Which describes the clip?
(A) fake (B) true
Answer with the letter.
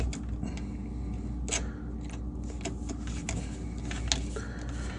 B